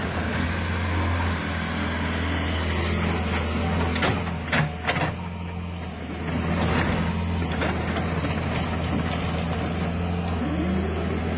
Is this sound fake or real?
real